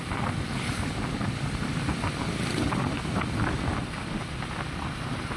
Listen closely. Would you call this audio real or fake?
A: real